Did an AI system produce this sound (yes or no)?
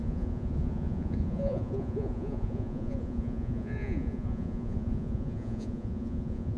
yes